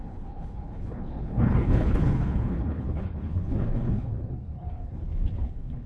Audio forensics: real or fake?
fake